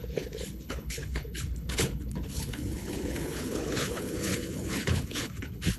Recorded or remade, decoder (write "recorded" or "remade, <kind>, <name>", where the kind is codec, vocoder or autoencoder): remade, codec, HILCodec